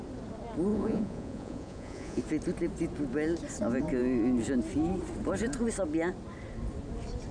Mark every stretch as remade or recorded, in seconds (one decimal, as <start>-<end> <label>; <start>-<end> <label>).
0.0-0.7 recorded; 0.7-2.2 remade; 2.2-7.3 recorded